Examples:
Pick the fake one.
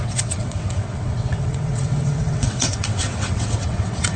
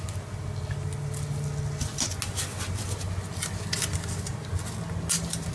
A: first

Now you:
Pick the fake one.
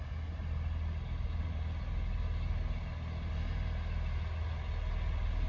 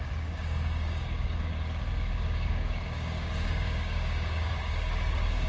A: second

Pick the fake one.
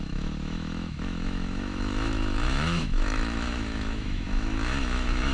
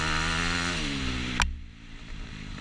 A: first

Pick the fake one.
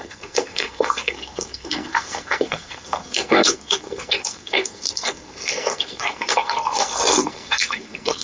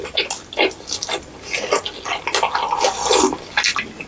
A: first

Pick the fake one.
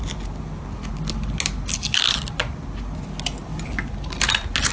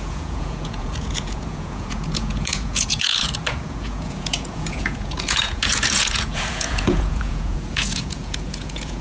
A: second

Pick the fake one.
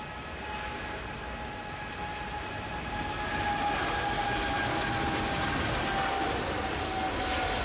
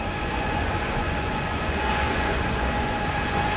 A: second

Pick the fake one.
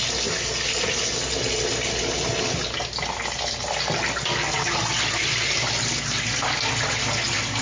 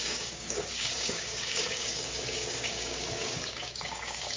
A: second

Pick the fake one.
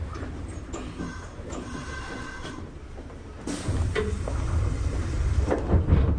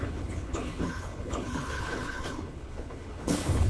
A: second